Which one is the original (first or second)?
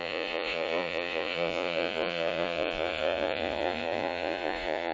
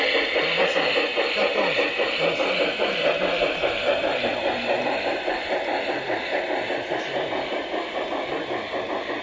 second